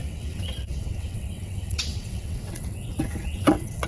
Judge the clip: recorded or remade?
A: remade